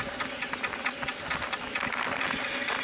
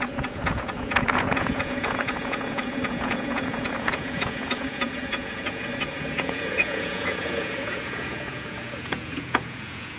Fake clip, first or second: second